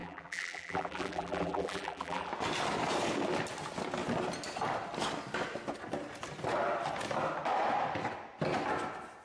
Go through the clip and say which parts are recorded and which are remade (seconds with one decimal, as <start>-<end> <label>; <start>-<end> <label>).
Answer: 0.0-2.3 remade; 2.3-9.2 recorded